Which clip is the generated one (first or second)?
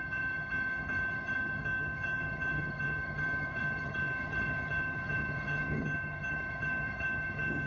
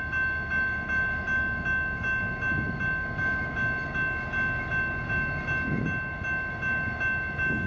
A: first